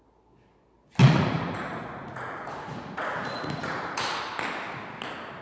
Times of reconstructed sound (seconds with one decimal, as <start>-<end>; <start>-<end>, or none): 1.0-4.2